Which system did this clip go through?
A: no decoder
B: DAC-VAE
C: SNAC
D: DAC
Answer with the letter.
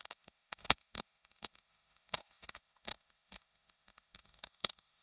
B